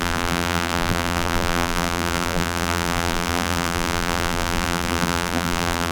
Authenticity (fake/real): fake